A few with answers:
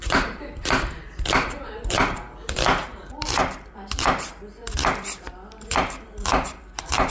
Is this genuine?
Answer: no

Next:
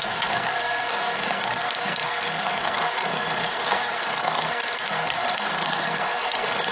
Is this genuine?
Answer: no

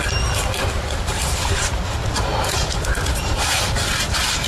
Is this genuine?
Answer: yes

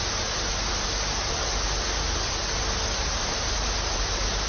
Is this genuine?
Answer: yes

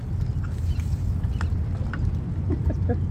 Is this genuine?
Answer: yes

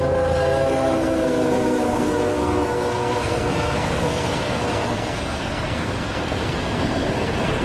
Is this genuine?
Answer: no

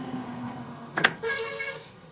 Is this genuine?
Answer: no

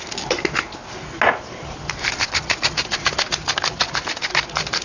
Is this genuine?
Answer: yes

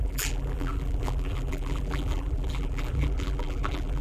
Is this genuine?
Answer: no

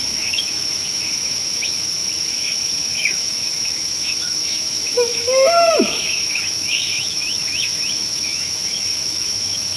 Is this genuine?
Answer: no